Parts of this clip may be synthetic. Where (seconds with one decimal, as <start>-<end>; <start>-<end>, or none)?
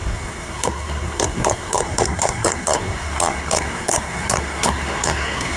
0.0-5.6